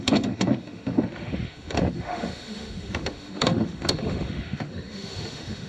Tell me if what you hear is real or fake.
fake